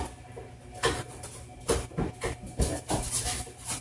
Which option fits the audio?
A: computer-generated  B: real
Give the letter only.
B